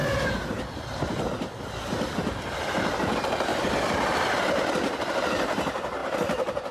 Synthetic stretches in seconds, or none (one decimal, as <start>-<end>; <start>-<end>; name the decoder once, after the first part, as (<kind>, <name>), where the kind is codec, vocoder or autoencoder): 0.0-1.3 (vocoder, BigVGAN v2); 3.5-4.9; 6.0-6.7